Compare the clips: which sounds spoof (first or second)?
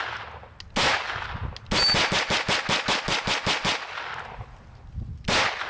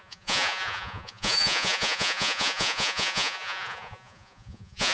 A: second